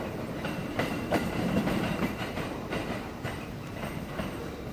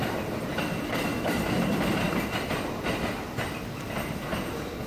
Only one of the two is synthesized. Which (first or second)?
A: first